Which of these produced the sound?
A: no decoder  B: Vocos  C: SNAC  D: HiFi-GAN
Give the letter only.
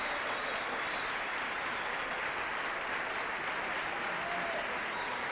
A